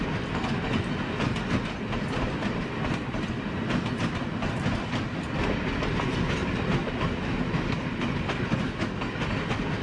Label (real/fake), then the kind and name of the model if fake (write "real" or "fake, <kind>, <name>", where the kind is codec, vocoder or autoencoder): real